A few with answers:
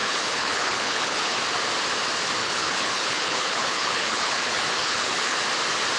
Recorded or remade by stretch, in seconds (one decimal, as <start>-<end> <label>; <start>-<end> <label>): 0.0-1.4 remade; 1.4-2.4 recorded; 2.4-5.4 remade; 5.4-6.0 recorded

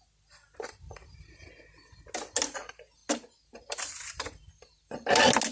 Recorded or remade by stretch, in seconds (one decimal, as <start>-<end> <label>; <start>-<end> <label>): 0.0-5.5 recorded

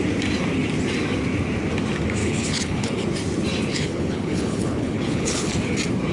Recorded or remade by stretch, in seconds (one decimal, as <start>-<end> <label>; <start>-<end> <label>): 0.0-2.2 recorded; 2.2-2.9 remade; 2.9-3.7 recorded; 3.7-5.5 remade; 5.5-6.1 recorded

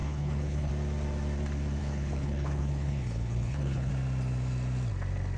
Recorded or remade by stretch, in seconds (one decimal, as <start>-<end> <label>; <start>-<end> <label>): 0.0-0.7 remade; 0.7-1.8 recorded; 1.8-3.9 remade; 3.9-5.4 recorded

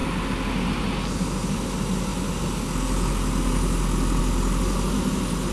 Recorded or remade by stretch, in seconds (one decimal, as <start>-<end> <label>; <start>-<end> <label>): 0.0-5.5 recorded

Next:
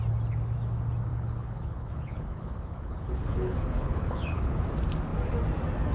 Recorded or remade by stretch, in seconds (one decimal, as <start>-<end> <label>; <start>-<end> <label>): 0.0-1.1 recorded; 1.1-4.6 remade; 4.6-5.9 recorded

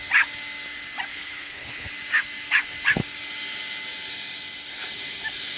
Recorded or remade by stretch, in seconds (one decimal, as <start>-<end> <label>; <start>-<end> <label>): 0.0-1.1 recorded; 1.1-1.9 remade; 1.9-5.6 recorded

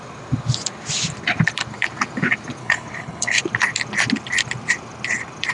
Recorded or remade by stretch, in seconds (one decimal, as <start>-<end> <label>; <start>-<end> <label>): 0.0-2.6 recorded; 2.6-3.4 remade; 3.4-5.5 recorded